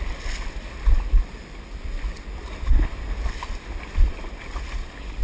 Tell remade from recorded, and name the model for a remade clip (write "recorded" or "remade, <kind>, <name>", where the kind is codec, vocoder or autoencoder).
recorded